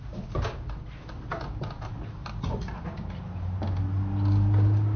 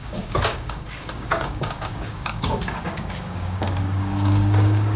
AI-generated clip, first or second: second